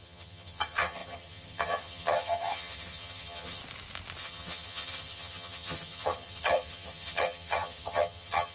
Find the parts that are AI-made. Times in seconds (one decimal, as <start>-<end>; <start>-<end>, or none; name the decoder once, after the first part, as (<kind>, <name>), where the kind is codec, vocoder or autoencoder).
0.0-3.6 (vocoder, HiFi-GAN); 4.2-8.5